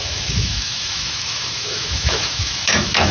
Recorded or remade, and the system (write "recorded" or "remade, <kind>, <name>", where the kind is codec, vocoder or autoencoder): remade, autoencoder, DAC-VAE